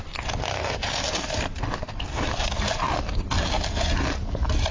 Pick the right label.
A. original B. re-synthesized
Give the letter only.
A